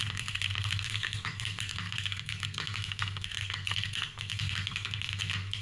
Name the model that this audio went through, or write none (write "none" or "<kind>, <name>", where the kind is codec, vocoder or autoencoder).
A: codec, SNAC